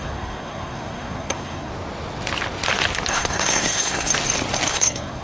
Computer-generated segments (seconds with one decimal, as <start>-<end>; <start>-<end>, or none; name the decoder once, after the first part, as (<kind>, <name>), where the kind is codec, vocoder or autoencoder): 0.0-1.7 (codec, SNAC); 3.1-4.1; 4.7-5.2